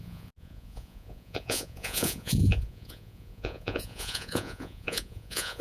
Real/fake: fake